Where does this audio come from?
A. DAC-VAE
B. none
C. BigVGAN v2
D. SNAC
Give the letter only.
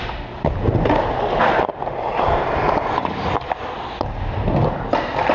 B